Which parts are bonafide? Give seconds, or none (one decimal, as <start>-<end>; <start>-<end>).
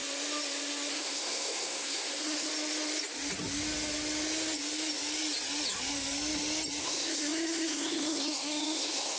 0.0-0.9; 2.5-6.8